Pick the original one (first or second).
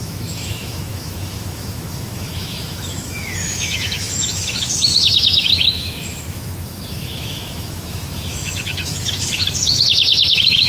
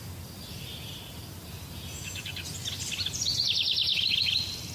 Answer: second